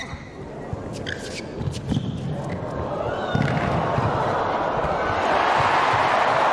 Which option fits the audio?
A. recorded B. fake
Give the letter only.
A